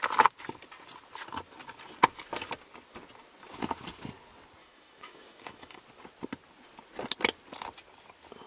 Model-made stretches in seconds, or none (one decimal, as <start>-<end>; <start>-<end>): 4.6-5.8